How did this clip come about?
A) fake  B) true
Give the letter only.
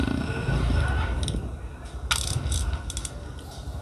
B